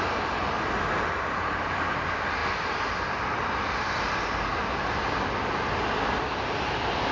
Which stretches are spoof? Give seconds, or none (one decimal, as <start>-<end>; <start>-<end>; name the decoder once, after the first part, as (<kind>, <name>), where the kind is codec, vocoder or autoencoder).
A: none